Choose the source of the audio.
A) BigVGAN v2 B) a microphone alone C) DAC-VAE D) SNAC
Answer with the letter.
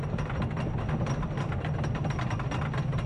B